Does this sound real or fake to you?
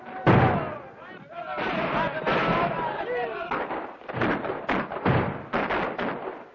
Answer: real